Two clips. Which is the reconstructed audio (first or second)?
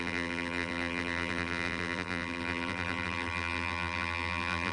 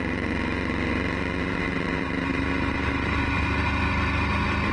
first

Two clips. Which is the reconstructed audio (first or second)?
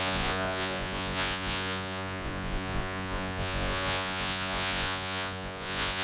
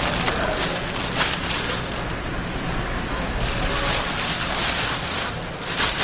first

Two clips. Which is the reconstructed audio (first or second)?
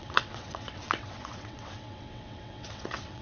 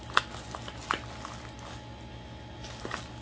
first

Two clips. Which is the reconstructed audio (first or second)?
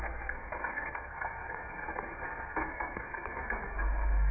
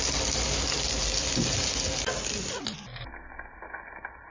first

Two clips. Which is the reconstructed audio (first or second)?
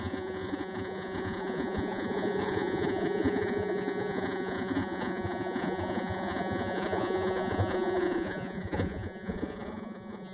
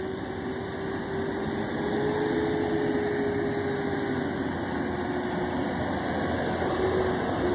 first